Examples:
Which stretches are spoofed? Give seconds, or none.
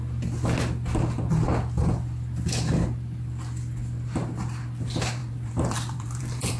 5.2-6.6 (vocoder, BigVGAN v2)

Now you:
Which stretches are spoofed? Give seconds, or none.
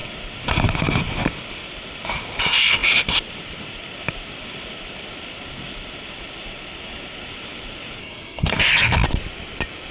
8.0-8.6 (codec, SNAC)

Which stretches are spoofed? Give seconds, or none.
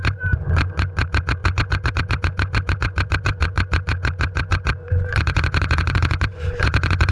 0.0-7.1 (vocoder, Vocos)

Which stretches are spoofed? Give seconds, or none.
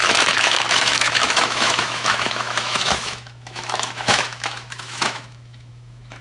0.0-6.2 (autoencoder, DAC-VAE)